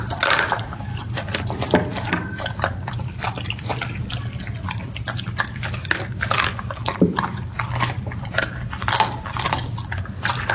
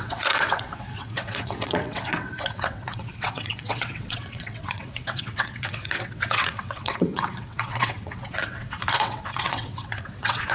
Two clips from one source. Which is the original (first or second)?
first